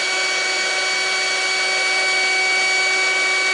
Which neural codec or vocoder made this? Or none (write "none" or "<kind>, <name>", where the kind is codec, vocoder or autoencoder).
none